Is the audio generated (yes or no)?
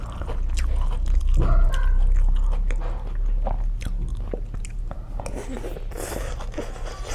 no